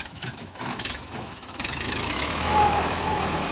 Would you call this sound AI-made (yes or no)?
yes